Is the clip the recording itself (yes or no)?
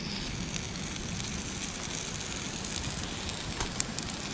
yes